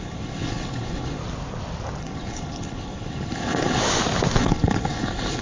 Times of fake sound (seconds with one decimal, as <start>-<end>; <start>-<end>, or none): 0.0-1.2; 2.0-3.8; 4.4-5.4